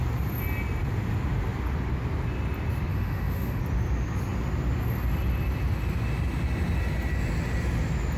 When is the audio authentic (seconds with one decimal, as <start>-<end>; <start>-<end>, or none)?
0.0-2.9; 3.6-8.2